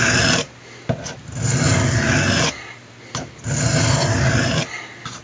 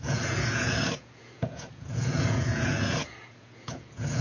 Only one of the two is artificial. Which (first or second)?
second